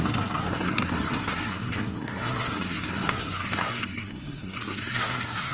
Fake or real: fake